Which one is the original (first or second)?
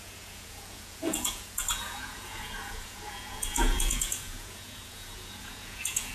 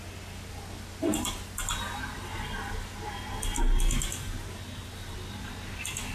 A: second